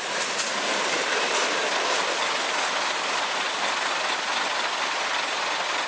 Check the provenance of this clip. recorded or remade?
recorded